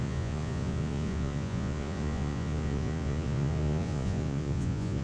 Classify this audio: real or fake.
fake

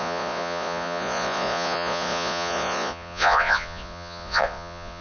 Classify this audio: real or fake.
fake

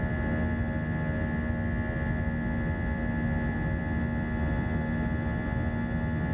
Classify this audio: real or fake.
real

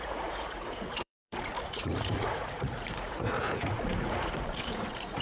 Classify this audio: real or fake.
fake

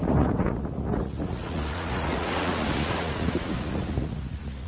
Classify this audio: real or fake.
fake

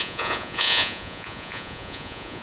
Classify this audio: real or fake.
fake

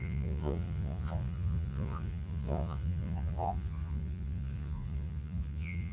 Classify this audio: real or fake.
fake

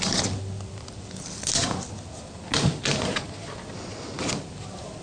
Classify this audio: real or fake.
real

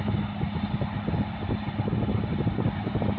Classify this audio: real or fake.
real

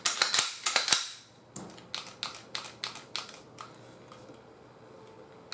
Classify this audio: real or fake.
real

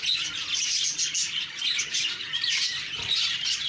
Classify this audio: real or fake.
real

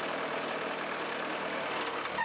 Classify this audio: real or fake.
real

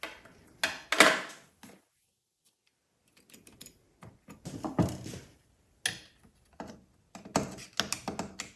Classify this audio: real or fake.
real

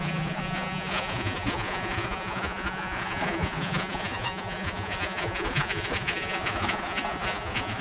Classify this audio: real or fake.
fake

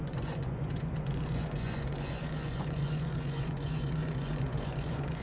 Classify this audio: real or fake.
fake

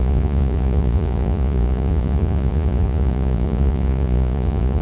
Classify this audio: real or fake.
fake